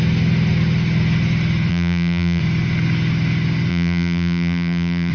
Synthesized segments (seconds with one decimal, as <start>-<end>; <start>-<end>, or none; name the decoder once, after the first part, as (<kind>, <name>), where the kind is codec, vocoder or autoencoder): 1.7-2.4 (vocoder, BigVGAN v2); 3.7-5.1